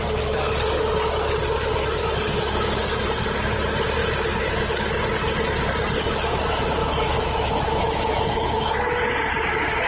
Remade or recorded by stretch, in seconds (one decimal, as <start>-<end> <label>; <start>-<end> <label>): 0.0-6.8 recorded; 6.8-8.7 remade; 8.7-9.9 recorded